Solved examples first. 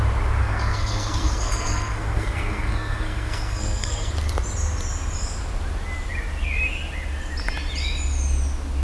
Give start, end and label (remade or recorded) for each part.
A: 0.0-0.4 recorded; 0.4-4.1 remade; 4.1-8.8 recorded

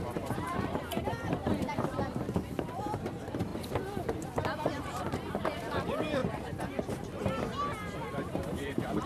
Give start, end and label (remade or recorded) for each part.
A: 0.0-9.1 remade

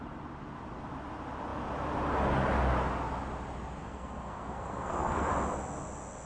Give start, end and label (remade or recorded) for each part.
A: 0.0-3.8 recorded; 3.8-5.3 remade; 5.3-6.3 recorded

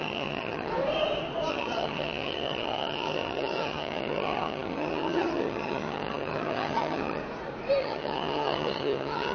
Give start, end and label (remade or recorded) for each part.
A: 0.0-0.7 remade; 0.7-1.5 recorded; 1.5-7.2 remade; 7.2-7.8 recorded; 7.8-9.3 remade

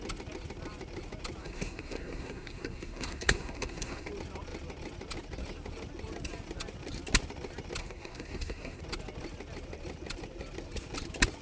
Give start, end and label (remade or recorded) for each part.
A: 0.0-1.4 recorded; 1.4-4.1 remade; 4.1-7.8 recorded; 7.8-8.8 remade; 8.8-11.4 recorded

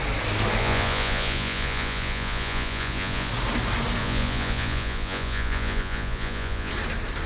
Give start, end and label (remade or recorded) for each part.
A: 0.0-0.6 recorded; 0.6-3.3 remade; 3.3-4.0 recorded; 4.0-6.7 remade; 6.7-7.3 recorded

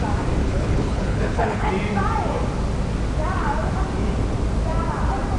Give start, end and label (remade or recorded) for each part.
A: 0.0-0.4 recorded; 0.4-1.7 remade; 1.7-5.4 recorded

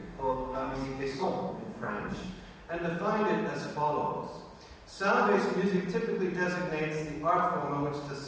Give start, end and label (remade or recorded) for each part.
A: 0.0-2.6 remade; 2.6-8.3 recorded